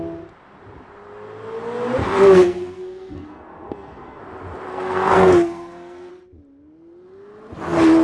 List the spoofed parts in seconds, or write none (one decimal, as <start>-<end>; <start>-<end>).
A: 2.0-4.2; 4.7-6.1